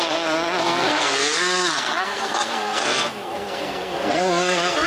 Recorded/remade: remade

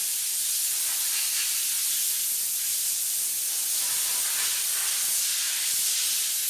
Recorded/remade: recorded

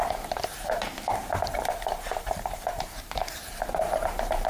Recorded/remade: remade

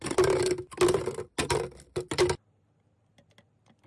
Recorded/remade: recorded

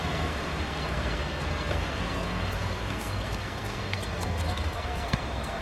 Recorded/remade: remade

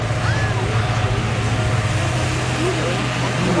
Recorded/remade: recorded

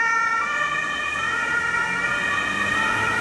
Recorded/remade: recorded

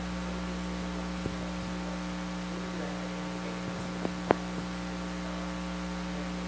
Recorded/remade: recorded